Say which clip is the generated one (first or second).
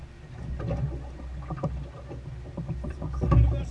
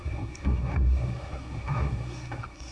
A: second